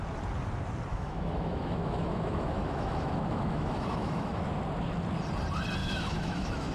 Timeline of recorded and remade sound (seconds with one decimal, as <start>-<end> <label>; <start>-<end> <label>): 0.0-0.9 recorded; 0.9-4.4 remade; 4.4-5.8 recorded; 5.8-6.7 remade